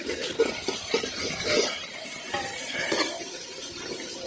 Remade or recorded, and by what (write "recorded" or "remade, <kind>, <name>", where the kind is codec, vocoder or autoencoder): recorded